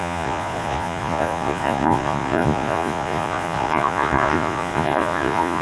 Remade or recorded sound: remade